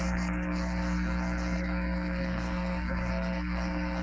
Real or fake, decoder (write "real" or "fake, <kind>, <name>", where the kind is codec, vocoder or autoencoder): fake, codec, SNAC